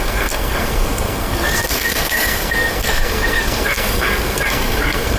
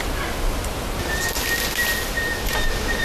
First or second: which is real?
second